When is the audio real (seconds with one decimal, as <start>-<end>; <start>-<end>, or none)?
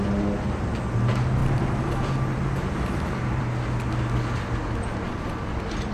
0.0-1.4; 3.4-5.9